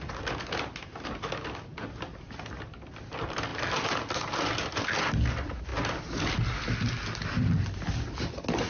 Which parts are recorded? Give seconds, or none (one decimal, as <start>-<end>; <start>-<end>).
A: 0.0-1.7; 2.5-3.5; 5.1-8.7